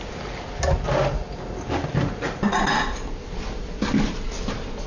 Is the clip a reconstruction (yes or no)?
no